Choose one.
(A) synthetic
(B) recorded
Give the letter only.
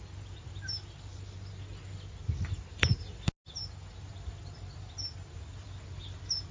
B